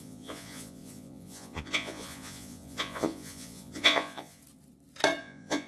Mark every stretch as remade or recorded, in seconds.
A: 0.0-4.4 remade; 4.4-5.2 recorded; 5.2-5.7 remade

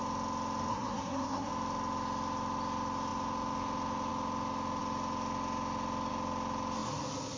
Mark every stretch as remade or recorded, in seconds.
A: 0.0-0.7 recorded; 0.7-1.5 remade; 1.5-7.4 recorded

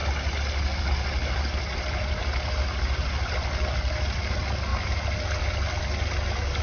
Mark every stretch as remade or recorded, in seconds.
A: 0.0-6.6 recorded

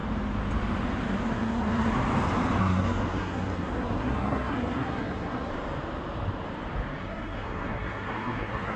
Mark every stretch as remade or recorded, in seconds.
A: 0.0-1.3 recorded; 1.3-1.9 remade; 1.9-2.6 recorded; 2.6-5.5 remade; 5.5-7.0 recorded; 7.0-8.8 remade

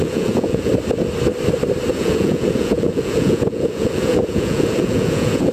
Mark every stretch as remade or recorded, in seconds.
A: 0.0-0.7 remade; 0.7-1.9 recorded; 1.9-5.5 remade

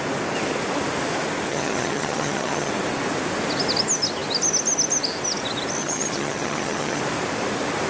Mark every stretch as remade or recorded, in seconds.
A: 0.0-1.5 recorded; 1.5-2.7 remade; 2.7-5.8 recorded; 5.8-7.0 remade; 7.0-7.9 recorded

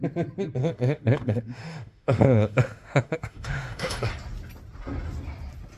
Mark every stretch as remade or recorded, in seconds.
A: 0.0-0.6 recorded; 0.6-4.1 remade; 4.1-5.8 recorded